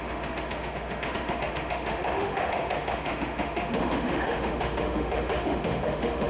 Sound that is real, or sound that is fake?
fake